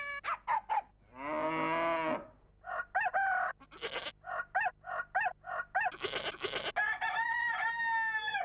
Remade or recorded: recorded